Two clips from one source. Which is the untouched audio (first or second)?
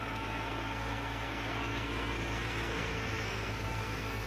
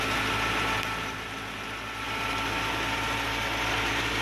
second